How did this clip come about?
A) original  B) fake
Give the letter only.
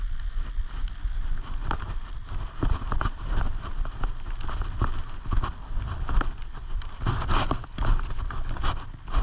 A